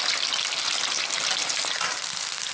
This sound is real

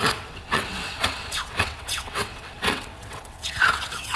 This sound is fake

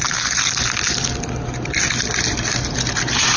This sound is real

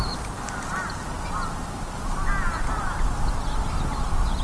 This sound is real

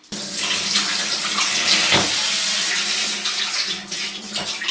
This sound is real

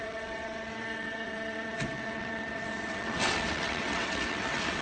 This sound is fake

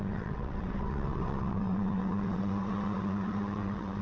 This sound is fake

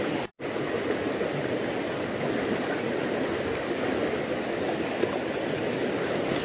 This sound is real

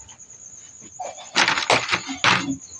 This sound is real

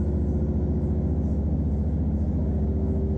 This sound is real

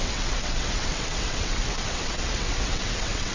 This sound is fake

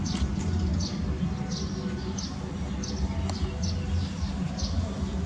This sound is real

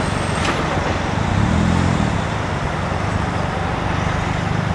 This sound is real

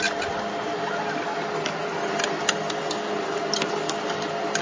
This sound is real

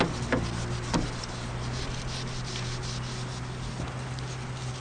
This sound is real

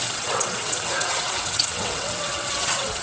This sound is fake